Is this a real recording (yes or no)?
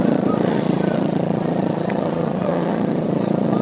no